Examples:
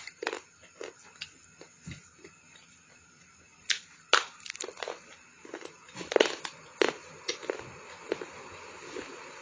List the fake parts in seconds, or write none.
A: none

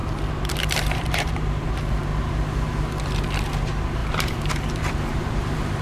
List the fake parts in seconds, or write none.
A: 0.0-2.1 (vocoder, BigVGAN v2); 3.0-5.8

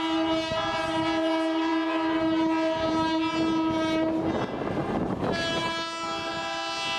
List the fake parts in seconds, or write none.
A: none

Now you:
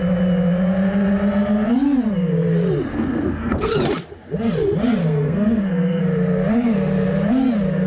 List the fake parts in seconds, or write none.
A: 2.9-3.7 (codec, SNAC); 5.0-6.0

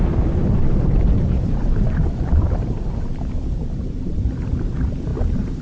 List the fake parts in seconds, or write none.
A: 0.6-2.9 (vocoder, BigVGAN v2); 3.6-4.3; 5.1-5.6

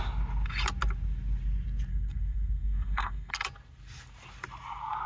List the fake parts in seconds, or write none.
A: 1.9-3.3 (codec, SNAC)

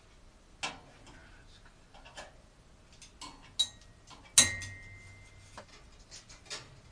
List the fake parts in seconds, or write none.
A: none